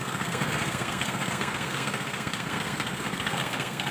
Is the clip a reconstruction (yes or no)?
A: yes